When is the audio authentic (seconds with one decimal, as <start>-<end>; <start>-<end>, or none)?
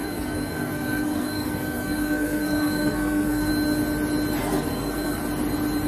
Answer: 3.5-4.4; 5.2-5.9